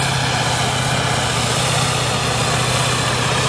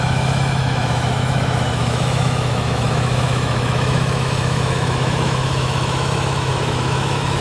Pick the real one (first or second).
first